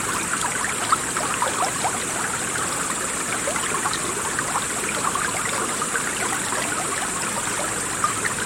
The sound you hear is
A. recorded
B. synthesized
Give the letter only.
A